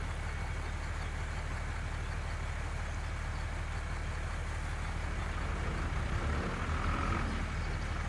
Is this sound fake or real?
real